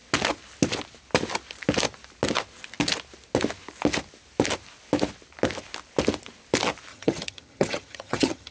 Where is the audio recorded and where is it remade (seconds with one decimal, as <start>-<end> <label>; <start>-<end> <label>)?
0.0-6.9 recorded; 6.9-8.5 remade